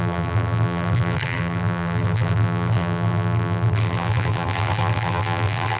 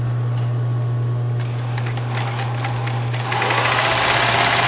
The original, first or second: second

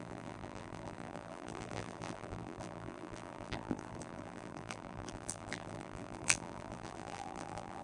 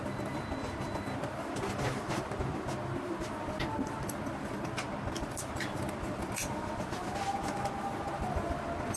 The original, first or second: second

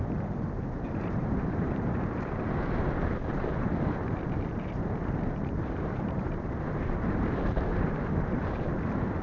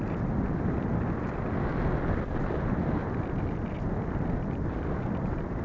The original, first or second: second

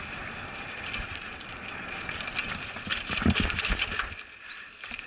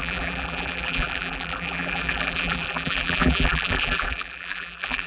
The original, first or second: first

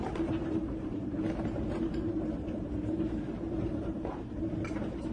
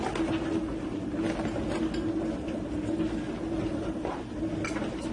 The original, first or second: second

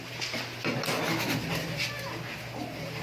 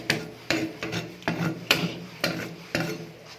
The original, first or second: first